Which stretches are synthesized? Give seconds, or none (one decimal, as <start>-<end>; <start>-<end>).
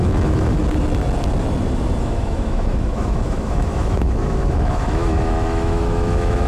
0.0-0.6; 2.0-6.5